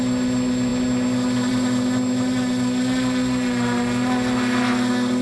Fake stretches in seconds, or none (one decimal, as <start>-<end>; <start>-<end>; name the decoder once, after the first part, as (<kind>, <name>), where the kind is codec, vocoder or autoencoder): none